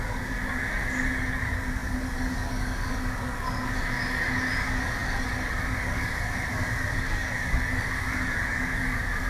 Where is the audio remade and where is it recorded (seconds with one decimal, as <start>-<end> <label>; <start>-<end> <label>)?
0.0-9.3 remade